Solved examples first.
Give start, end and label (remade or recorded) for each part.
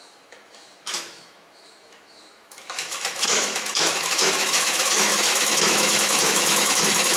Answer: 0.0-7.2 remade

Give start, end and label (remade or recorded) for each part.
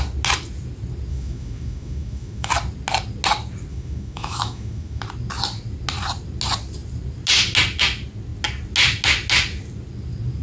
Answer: 0.0-1.1 recorded; 1.1-2.5 remade; 2.5-3.7 recorded; 3.7-5.0 remade; 5.0-10.4 recorded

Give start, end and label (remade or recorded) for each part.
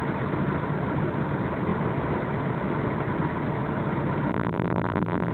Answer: 0.0-4.3 recorded; 4.3-5.3 remade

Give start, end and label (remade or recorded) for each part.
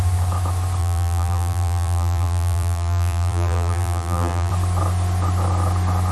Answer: 0.0-0.8 recorded; 0.8-4.5 remade; 4.5-6.1 recorded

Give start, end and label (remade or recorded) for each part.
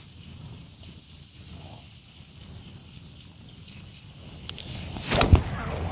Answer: 0.0-5.9 recorded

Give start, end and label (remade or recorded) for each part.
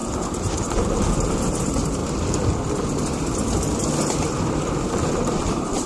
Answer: 0.0-2.0 remade; 2.0-4.3 recorded; 4.3-5.9 remade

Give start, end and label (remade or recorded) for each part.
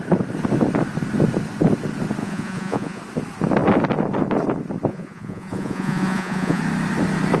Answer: 0.0-2.2 recorded; 2.2-3.0 remade; 3.0-4.9 recorded; 4.9-6.6 remade; 6.6-7.4 recorded